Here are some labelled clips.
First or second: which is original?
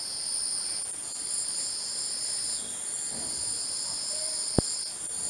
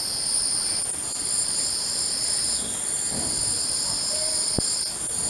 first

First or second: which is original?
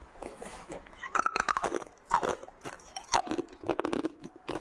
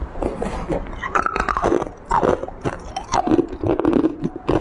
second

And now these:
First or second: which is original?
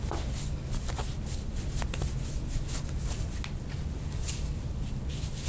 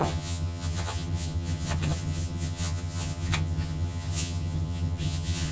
first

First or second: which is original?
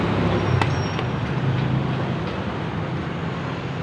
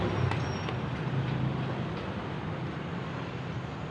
first